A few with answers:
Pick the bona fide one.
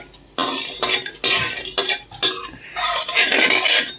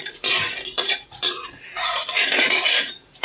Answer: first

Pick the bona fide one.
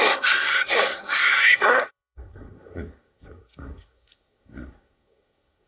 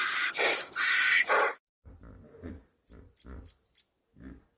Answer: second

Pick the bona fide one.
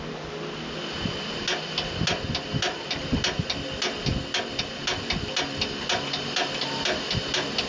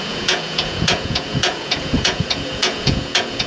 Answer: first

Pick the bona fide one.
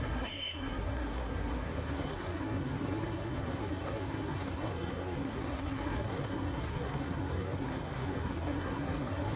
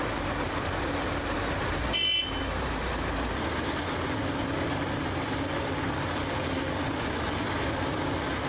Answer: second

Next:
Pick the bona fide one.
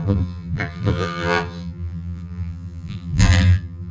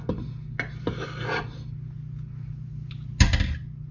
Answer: second